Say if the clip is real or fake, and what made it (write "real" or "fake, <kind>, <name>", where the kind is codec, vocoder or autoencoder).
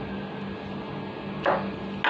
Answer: real